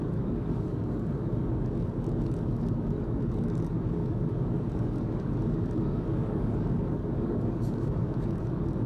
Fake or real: fake